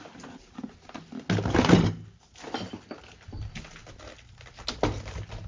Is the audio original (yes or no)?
yes